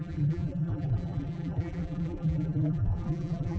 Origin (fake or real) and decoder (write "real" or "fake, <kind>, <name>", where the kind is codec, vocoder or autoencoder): fake, vocoder, BigVGAN v2